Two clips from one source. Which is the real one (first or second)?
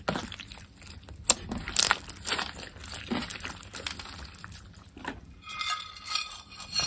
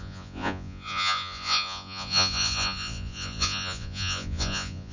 first